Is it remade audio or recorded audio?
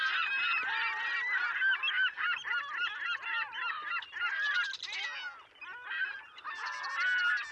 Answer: recorded